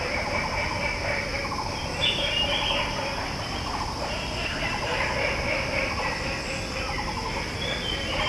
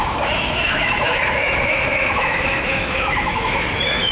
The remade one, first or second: second